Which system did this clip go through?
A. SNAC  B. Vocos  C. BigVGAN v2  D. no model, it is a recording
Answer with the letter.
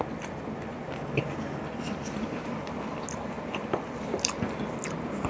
D